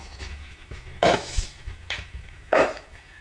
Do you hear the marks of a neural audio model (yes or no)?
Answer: yes